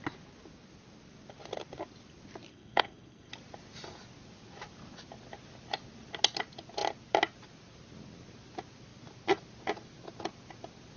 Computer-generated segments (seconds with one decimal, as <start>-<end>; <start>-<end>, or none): 2.5-3.3

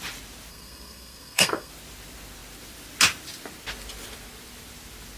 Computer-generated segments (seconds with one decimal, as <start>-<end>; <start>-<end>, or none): 0.5-1.7

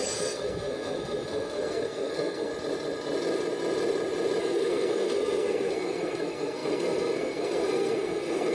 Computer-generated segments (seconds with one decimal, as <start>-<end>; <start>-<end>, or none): 0.0-2.5; 4.4-8.5

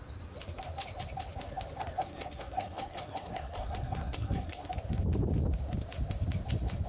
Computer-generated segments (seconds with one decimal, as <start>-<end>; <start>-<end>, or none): 2.0-4.7

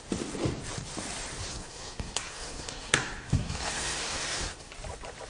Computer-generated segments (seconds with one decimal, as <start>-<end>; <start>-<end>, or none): 1.5-4.7

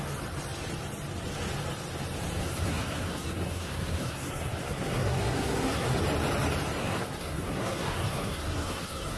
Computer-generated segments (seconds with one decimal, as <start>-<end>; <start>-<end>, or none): 2.4-6.0; 6.8-9.2